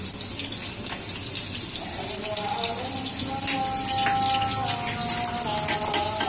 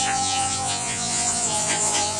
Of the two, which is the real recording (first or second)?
first